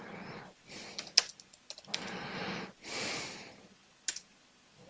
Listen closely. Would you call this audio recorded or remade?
recorded